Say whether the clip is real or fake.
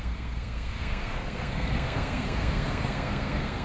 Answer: fake